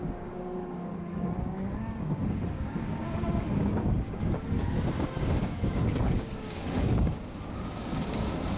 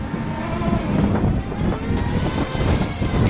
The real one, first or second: second